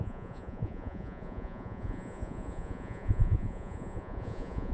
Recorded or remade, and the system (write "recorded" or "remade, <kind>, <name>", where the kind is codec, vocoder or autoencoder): remade, vocoder, Vocos